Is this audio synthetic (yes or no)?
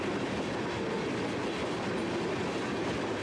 no